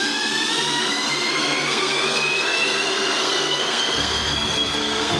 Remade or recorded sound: remade